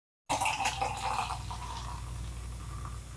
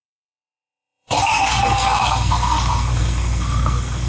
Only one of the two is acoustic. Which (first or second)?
first